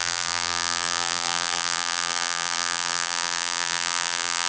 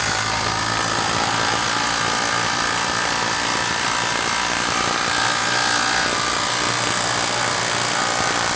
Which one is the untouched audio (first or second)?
second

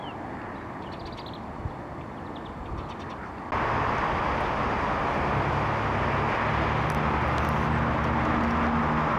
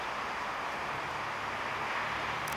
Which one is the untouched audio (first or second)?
first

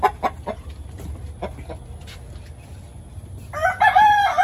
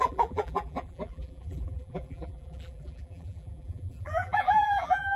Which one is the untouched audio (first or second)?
first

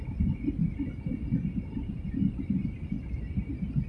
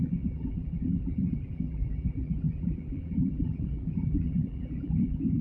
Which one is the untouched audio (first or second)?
first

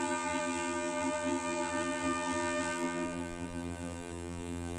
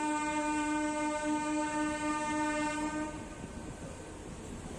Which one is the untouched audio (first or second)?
second